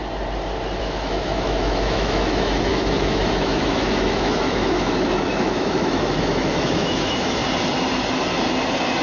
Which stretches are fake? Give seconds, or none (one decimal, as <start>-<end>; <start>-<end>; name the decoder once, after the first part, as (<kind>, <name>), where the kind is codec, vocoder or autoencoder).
0.8-7.4 (autoencoder, DAC-VAE)